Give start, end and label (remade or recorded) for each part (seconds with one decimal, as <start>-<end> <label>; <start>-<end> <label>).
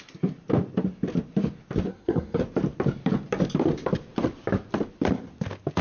0.0-1.9 recorded; 1.9-2.4 remade; 2.4-5.8 recorded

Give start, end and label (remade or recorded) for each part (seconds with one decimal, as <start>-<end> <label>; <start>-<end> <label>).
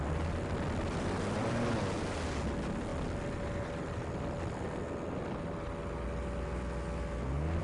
0.0-7.6 recorded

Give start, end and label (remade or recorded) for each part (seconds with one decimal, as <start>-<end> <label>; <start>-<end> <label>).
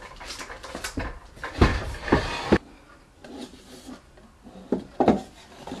0.0-1.7 recorded; 1.7-2.2 remade; 2.2-3.2 recorded; 3.2-4.0 remade; 4.0-5.8 recorded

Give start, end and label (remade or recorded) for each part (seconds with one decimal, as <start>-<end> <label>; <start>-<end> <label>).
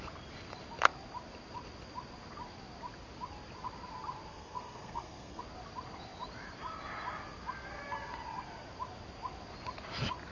0.0-4.3 recorded; 4.3-5.4 remade; 5.4-10.3 recorded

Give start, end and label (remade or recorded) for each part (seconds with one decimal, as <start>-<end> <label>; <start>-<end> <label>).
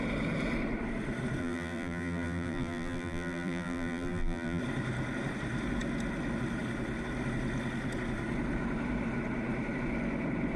0.0-1.4 recorded; 1.4-4.6 remade; 4.6-10.6 recorded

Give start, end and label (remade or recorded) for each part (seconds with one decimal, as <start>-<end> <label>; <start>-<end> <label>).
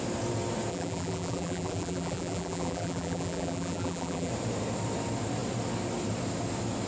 0.0-0.7 recorded; 0.7-4.3 remade; 4.3-6.9 recorded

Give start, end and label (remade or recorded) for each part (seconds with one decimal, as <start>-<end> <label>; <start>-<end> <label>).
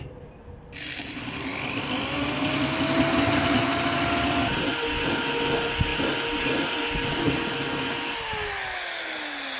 0.0-9.6 recorded